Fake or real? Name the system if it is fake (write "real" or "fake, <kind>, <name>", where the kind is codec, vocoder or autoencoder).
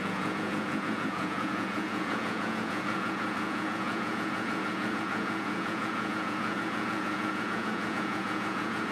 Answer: fake, vocoder, Vocos